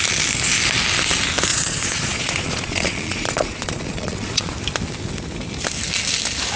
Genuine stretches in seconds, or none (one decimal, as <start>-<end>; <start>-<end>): 0.0-1.5; 4.5-6.6